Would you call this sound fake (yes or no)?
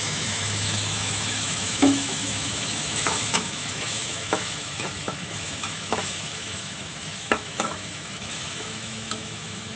yes